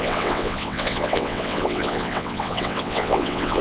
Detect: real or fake fake